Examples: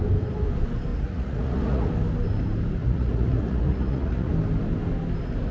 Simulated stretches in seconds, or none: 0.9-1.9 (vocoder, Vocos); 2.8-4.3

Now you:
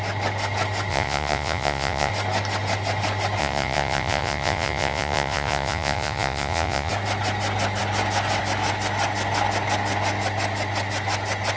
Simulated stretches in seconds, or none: 0.9-2.1 (vocoder, Vocos); 3.4-6.9

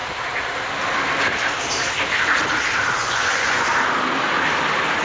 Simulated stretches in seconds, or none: 3.0-3.7 (vocoder, Vocos)